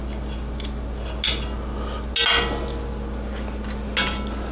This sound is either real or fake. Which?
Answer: real